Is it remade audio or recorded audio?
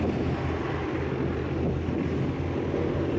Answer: recorded